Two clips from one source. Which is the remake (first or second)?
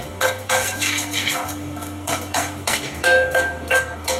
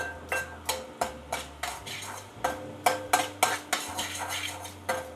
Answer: first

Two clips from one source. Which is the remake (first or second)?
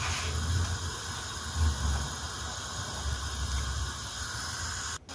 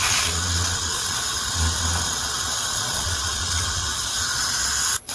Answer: second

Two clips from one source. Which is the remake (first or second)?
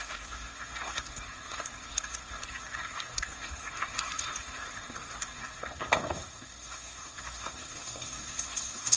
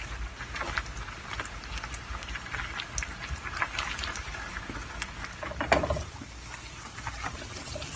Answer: first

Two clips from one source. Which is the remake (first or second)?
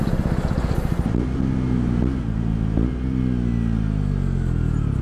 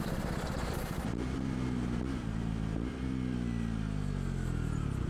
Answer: second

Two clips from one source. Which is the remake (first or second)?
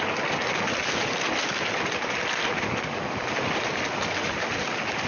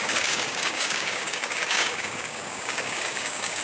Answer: second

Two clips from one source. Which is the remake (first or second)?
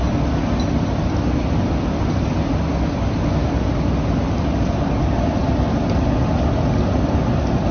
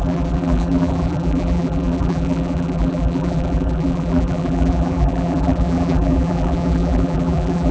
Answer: second